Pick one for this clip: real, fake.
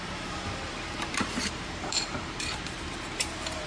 fake